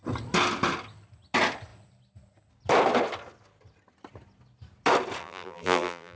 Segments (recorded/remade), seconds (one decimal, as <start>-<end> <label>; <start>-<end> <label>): 0.0-5.2 recorded; 5.2-6.2 remade

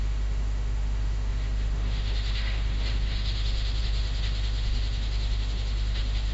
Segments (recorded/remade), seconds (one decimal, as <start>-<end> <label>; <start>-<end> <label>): 0.0-6.3 remade

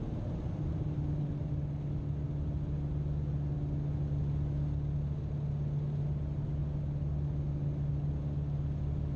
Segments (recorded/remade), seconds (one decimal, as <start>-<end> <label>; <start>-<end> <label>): 0.0-9.2 recorded

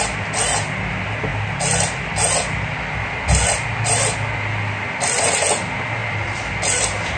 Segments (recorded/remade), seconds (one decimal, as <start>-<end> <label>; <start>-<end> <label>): 0.0-6.0 recorded; 6.0-6.8 remade; 6.8-7.2 recorded